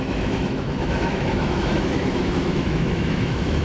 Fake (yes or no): yes